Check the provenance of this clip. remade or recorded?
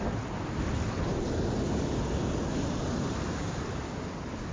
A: recorded